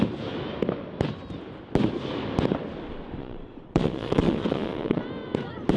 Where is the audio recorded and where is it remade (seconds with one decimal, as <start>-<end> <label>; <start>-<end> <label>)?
0.0-3.2 recorded; 3.2-5.0 remade; 5.0-5.8 recorded